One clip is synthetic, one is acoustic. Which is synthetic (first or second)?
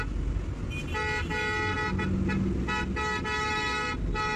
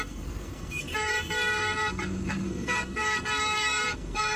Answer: second